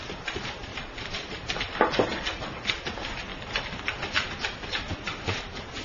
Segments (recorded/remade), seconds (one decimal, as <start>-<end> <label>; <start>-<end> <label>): 0.0-0.7 recorded; 0.7-2.2 remade; 2.2-5.8 recorded